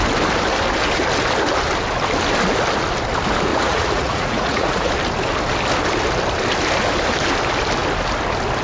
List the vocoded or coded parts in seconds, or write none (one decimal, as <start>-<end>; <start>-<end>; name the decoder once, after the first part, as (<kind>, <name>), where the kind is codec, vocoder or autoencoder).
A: 3.5-4.9 (vocoder, Vocos)